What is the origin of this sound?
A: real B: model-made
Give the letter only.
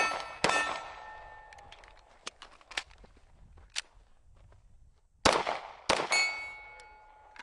A